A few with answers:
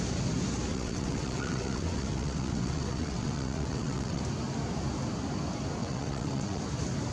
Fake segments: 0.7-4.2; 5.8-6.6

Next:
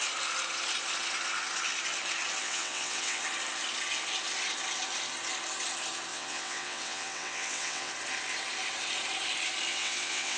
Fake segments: 2.4-3.2; 6.1-7.9; 9.7-10.4

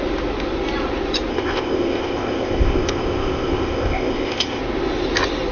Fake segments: 1.3-4.6

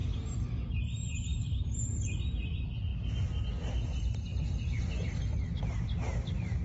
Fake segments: 1.3-2.2

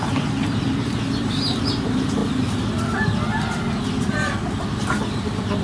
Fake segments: 0.0-2.2

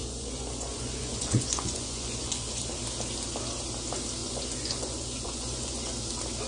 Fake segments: 0.0-2.6; 4.2-5.8

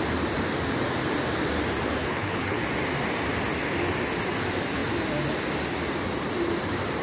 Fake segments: 2.0-2.6

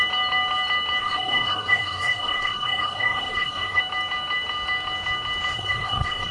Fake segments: 1.0-3.8; 5.5-6.3